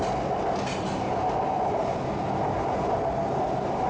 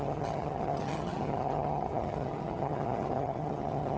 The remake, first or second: second